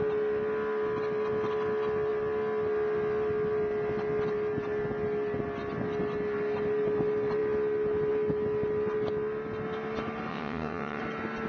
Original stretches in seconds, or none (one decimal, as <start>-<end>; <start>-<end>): 0.0-10.3; 11.0-11.5